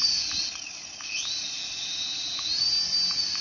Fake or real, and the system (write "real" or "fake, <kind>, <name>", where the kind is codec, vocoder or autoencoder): real